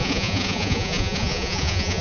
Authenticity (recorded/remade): remade